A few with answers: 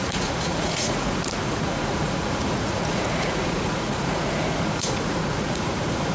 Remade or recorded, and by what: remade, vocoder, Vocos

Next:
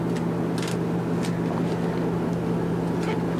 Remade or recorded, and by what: recorded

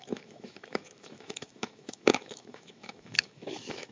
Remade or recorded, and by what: remade, autoencoder, DAC-VAE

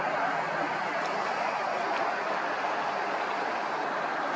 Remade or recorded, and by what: recorded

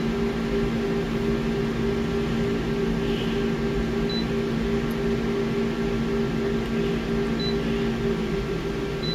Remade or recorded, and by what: recorded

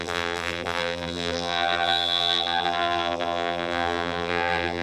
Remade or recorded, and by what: remade, vocoder, BigVGAN v2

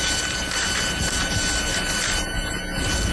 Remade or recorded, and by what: recorded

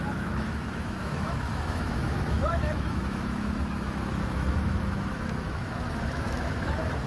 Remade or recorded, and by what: remade, autoencoder, DAC-VAE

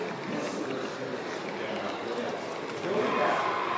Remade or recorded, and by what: recorded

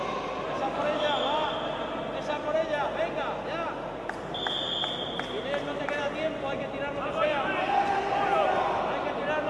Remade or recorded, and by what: recorded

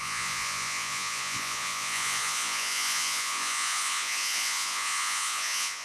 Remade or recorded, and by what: remade, vocoder, Vocos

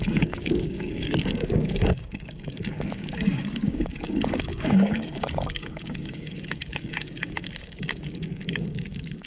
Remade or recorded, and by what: remade, codec, DAC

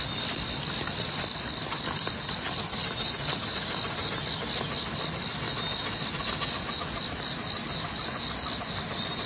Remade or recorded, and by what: recorded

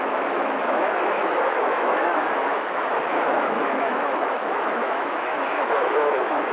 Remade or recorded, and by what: remade, autoencoder, DAC-VAE